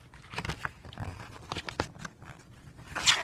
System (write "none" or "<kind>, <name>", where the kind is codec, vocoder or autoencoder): none